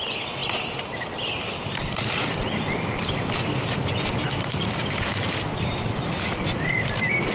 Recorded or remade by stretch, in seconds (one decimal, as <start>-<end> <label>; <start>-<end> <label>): 0.0-7.3 remade